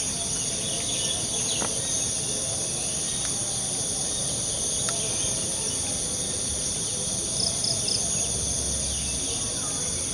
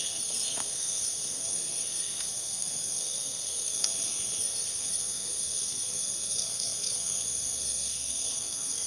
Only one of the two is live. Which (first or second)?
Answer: first